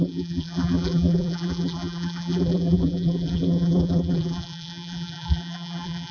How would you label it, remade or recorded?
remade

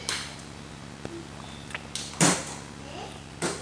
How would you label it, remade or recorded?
recorded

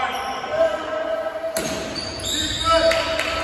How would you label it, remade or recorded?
recorded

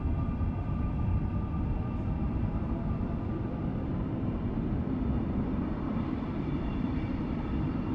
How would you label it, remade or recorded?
remade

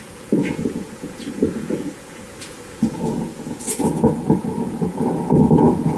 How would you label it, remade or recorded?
remade